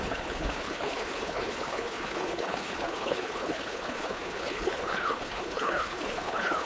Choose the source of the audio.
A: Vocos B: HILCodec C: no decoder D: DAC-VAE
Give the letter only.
B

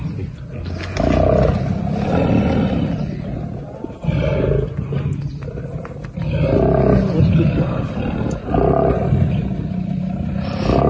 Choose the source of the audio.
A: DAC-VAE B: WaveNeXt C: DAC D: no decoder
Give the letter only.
D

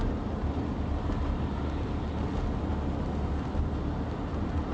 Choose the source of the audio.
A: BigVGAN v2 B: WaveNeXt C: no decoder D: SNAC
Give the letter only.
C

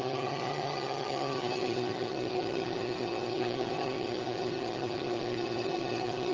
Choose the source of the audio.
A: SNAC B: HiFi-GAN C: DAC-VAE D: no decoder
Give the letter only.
B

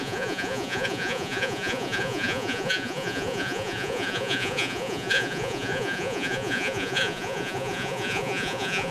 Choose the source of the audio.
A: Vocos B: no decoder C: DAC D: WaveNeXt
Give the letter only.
A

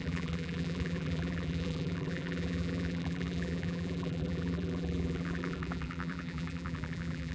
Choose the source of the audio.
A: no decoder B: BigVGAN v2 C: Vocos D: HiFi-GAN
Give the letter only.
B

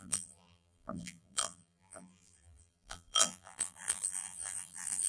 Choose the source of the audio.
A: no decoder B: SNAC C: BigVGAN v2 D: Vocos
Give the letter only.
C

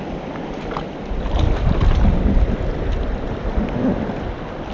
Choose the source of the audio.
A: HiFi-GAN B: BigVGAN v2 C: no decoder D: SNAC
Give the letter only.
C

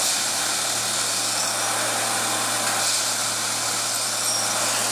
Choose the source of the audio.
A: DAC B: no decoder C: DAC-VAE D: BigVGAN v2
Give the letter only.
B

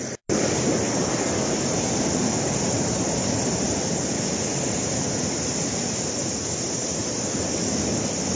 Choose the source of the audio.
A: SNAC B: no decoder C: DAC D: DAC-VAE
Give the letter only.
B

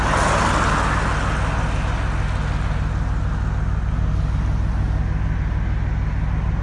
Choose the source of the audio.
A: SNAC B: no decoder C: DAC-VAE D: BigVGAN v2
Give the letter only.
B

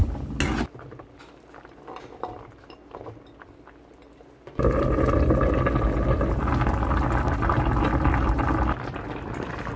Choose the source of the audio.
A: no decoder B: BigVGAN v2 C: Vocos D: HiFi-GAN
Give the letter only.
A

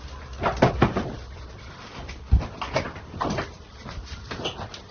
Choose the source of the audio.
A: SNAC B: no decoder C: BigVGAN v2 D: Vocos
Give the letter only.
B